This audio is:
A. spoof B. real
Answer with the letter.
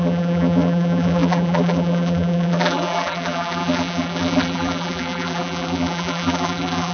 A